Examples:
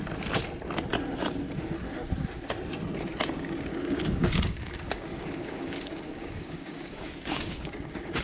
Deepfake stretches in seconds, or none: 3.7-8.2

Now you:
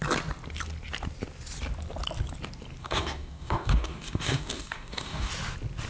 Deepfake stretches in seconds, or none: 2.8-5.3

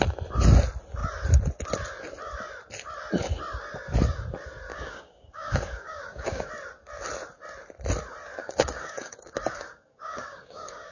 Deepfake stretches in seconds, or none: 4.7-6.5; 8.4-10.9

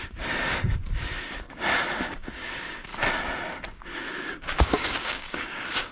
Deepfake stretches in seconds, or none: 0.0-0.8; 1.9-2.9; 4.1-5.9

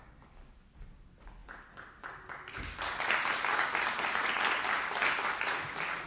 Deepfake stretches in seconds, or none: none

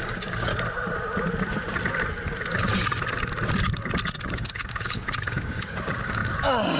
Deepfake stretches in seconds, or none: 0.0-0.5; 4.2-6.2

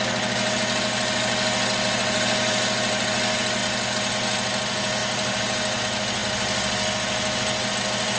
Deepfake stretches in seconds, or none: none